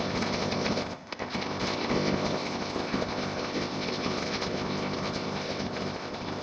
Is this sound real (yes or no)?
no